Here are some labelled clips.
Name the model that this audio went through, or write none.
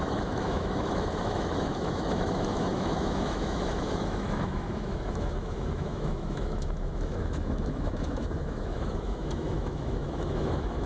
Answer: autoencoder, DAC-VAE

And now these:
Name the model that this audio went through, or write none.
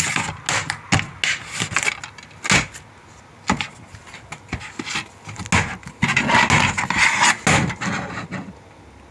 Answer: none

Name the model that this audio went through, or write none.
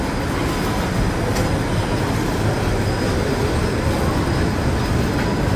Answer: none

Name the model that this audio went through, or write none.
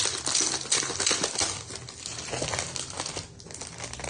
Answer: none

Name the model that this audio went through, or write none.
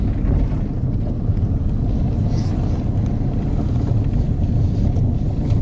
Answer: none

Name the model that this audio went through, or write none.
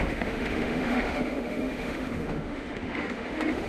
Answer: autoencoder, DAC-VAE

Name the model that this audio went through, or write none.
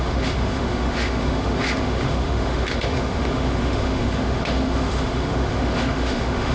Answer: autoencoder, DAC-VAE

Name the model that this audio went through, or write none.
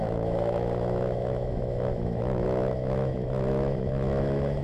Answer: autoencoder, DAC-VAE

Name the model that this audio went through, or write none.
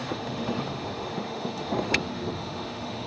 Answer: autoencoder, DAC-VAE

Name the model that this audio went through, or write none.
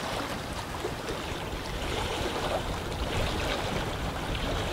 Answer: none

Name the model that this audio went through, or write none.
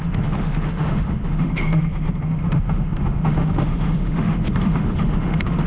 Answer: autoencoder, DAC-VAE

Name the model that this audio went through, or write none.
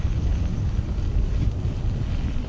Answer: none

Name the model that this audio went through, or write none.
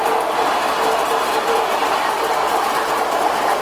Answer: none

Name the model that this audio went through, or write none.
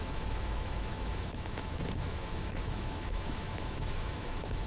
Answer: autoencoder, DAC-VAE